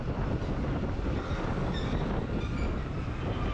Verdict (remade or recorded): recorded